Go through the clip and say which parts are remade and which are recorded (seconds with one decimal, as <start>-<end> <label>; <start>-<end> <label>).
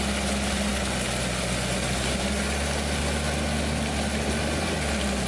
0.0-5.3 recorded